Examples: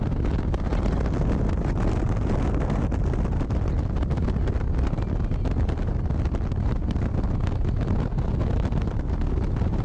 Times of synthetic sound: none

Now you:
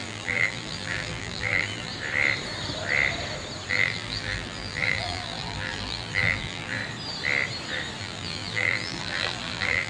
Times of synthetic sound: 0.0-1.9; 3.7-6.8; 8.0-9.9

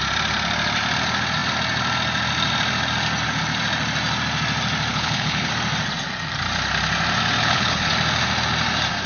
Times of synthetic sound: 4.9-5.5; 7.4-7.9

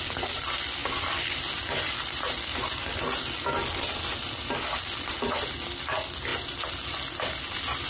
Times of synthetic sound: none

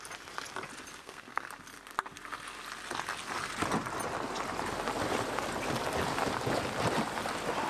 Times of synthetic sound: 1.0-1.5

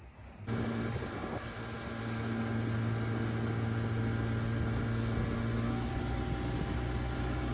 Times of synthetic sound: none